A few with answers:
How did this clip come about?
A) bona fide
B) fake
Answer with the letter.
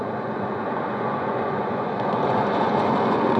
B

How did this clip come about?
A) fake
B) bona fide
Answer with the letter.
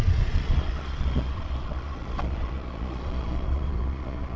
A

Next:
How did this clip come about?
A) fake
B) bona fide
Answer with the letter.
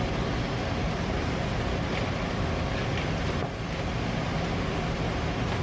B